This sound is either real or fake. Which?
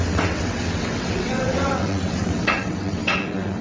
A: fake